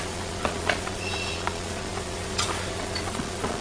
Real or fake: fake